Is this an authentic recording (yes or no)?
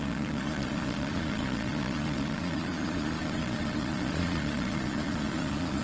no